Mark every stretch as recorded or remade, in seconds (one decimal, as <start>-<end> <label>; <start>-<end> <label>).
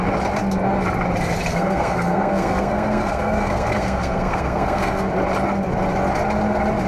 0.0-1.5 recorded; 1.5-5.1 remade; 5.1-6.9 recorded